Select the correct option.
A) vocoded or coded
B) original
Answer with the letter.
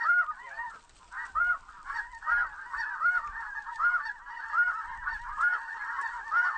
B